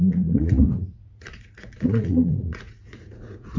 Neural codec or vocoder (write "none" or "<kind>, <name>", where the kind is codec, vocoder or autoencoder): vocoder, Vocos